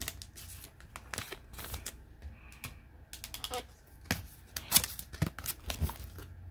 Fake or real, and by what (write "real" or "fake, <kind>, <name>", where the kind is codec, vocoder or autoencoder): real